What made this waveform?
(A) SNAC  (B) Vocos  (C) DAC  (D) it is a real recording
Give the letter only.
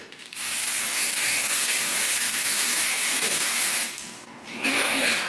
C